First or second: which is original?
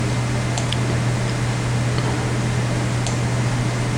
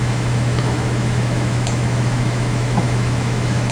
first